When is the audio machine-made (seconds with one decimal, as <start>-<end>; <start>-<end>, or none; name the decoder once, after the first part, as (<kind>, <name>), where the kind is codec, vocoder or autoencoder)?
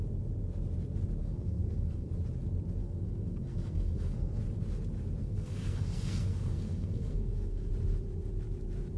1.2-2.1 (codec, SNAC); 2.8-4.4; 5.2-7.7